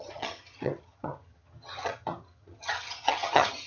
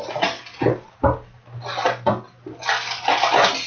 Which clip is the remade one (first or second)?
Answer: first